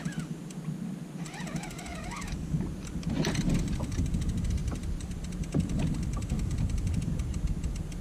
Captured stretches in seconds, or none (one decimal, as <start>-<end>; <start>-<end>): 0.0-8.0